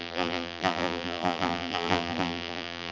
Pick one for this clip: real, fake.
fake